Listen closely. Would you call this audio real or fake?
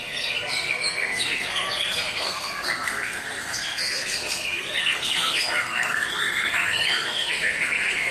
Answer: fake